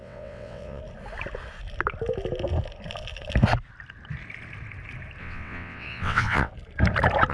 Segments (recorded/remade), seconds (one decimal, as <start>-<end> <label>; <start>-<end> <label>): 0.0-0.8 remade; 0.8-5.2 recorded; 5.2-6.5 remade; 6.5-7.3 recorded

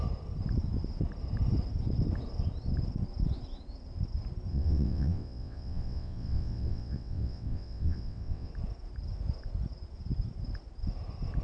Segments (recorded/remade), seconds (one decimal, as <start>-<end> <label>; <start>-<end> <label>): 0.0-4.5 recorded; 4.5-8.5 remade; 8.5-11.4 recorded

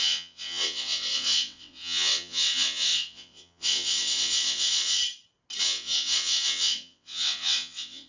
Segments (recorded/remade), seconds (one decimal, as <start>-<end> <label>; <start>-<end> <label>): 0.0-5.0 remade; 5.0-5.6 recorded; 5.6-8.1 remade

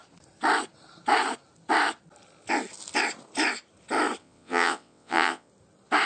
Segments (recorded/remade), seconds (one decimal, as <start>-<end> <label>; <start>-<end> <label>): 0.0-4.2 recorded; 4.2-5.5 remade; 5.5-6.1 recorded

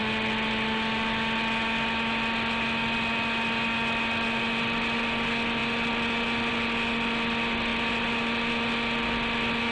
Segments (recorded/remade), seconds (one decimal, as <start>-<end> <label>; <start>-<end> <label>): 0.0-9.7 recorded

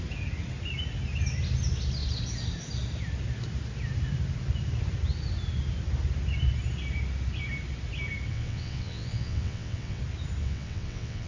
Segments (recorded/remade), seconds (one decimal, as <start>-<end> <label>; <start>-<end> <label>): 0.0-8.3 recorded; 8.3-10.0 remade; 10.0-10.4 recorded; 10.4-11.3 remade